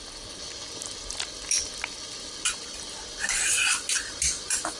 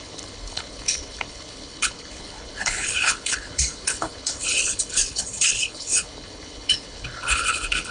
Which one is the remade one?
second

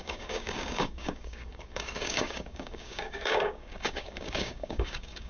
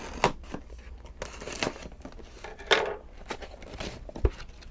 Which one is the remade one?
first